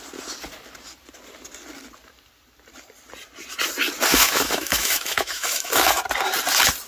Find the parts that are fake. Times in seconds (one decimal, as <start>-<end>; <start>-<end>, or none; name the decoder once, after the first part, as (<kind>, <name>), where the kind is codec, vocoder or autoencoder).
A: 4.1-6.0 (autoencoder, DAC-VAE)